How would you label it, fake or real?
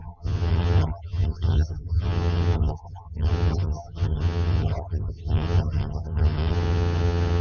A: fake